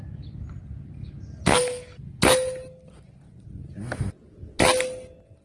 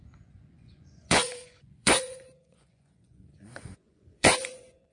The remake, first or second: second